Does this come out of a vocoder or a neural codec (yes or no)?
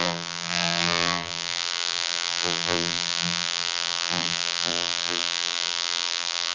yes